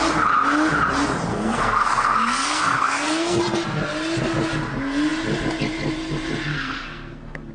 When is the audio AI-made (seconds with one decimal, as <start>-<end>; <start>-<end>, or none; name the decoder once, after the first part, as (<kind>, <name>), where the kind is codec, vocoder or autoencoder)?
1.3-3.4 (codec, SNAC); 6.5-7.5